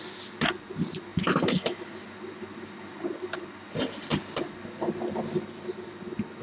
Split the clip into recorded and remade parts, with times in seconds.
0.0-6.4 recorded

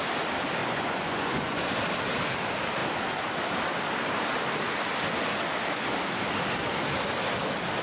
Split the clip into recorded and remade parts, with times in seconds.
0.0-0.6 recorded; 0.6-1.7 remade; 1.7-7.8 recorded

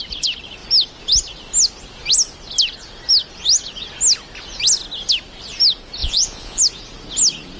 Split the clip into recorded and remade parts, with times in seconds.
0.0-6.0 recorded; 6.0-6.6 remade; 6.6-7.6 recorded

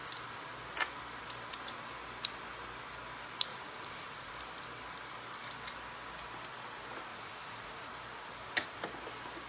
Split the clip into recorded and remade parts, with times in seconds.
0.0-3.5 recorded; 3.5-4.3 remade; 4.3-7.1 recorded; 7.1-7.9 remade; 7.9-9.5 recorded

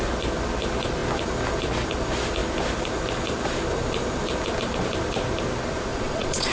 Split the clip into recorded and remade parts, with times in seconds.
0.0-5.9 recorded; 5.9-6.5 remade

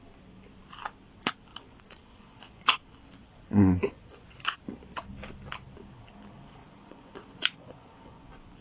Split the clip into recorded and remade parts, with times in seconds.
0.0-1.5 recorded; 1.5-2.6 remade; 2.6-3.3 recorded; 3.3-4.6 remade; 4.6-6.6 recorded; 6.6-8.6 remade

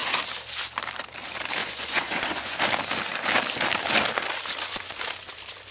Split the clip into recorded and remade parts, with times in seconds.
0.0-1.6 recorded; 1.6-2.6 remade; 2.6-5.7 recorded